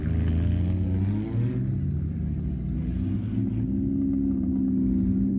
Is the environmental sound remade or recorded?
recorded